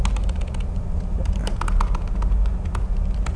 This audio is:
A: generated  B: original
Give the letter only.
B